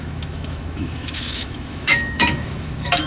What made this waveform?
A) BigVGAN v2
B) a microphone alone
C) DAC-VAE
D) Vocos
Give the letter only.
C